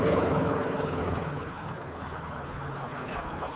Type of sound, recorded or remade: remade